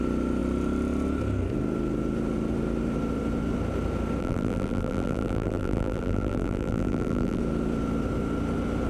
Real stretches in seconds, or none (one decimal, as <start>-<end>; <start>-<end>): 0.0-4.2; 7.4-8.9